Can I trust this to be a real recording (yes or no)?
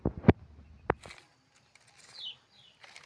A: yes